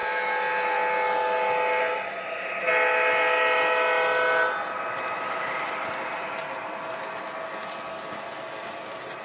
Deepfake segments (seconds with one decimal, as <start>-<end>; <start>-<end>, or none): none